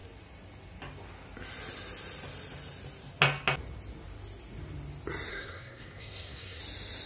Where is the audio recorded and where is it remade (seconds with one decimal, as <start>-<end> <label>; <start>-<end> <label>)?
0.0-5.3 recorded; 5.3-6.6 remade; 6.6-7.1 recorded